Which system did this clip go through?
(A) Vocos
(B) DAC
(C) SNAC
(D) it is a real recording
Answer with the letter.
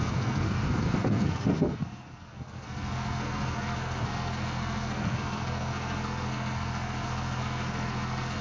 C